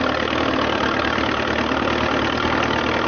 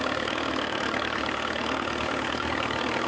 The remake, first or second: second